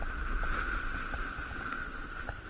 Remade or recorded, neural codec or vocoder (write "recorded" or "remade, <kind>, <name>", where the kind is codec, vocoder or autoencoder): recorded